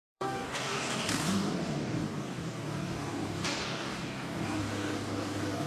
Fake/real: fake